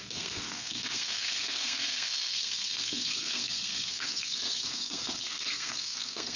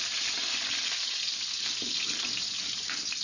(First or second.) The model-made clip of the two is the first